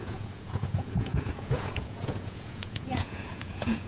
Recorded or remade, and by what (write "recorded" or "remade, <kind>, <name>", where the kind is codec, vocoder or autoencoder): remade, vocoder, Vocos